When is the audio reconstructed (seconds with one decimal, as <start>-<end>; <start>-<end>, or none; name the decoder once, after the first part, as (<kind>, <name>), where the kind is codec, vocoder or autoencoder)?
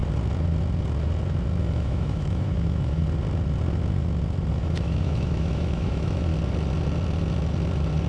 1.6-3.0 (autoencoder, DAC-VAE); 4.5-6.3